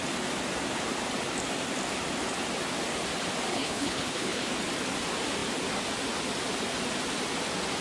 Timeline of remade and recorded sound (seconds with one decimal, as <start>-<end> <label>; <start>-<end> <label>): 0.0-3.5 recorded; 3.5-4.5 remade; 4.5-7.8 recorded